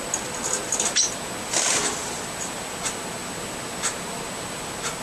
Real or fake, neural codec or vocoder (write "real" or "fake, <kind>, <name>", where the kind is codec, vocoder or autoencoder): real